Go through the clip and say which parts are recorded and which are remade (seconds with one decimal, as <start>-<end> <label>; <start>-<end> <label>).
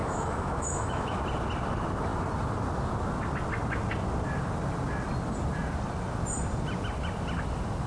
0.0-1.2 remade; 1.2-7.9 recorded